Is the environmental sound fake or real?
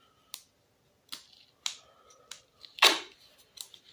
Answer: real